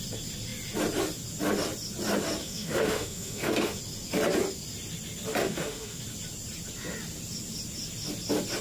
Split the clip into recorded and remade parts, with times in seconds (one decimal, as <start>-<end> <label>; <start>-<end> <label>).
0.0-2.4 recorded; 2.4-3.8 remade; 3.8-5.4 recorded; 5.4-6.0 remade; 6.0-8.6 recorded